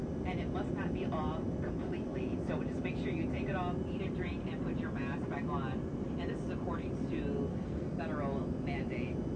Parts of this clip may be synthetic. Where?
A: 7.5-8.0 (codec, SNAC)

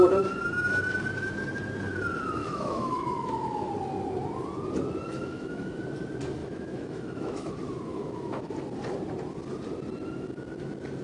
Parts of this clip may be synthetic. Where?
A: 2.4-3.7 (autoencoder, DAC-VAE); 5.1-5.8; 6.4-7.5; 7.9-8.5